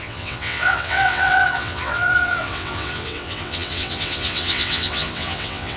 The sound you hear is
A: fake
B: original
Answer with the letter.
A